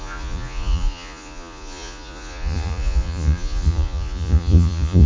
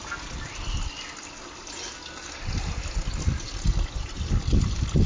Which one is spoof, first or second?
first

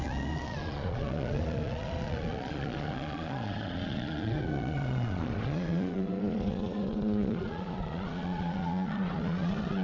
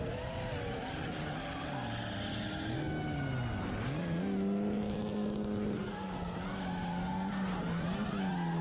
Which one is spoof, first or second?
first